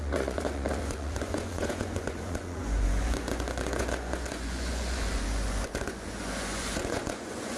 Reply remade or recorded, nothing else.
remade